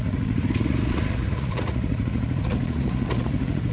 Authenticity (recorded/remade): remade